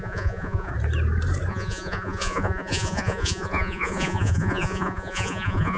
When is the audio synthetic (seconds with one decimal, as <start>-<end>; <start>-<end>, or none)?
0.0-0.7; 1.5-5.8